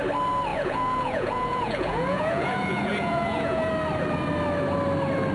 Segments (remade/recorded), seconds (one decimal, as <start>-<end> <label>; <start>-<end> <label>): 0.0-0.5 recorded; 0.5-3.7 remade; 3.7-5.3 recorded